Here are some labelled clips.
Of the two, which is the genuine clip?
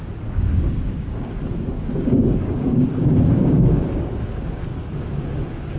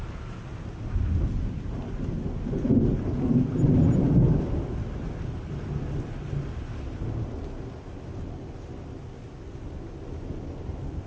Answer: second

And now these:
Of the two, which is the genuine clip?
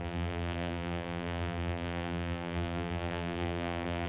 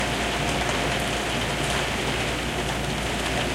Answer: second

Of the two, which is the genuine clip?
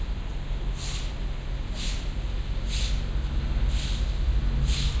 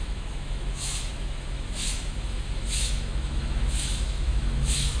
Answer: first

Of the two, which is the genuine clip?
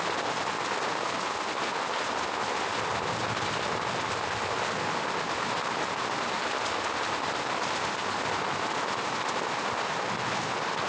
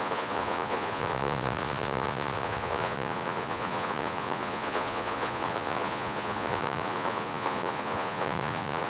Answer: first